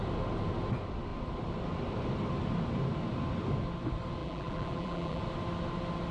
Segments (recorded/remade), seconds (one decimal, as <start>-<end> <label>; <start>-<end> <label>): 0.0-4.2 recorded; 4.2-5.2 remade; 5.2-6.1 recorded